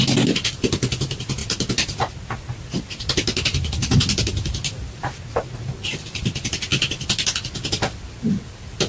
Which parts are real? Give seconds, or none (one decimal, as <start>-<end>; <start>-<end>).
0.0-8.9